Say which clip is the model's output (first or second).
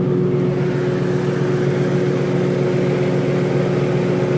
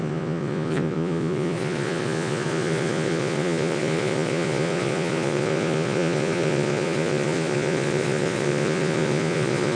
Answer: second